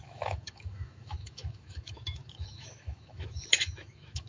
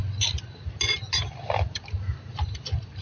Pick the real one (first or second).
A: second